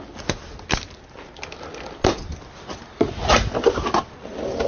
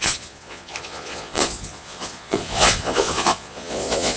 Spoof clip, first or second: second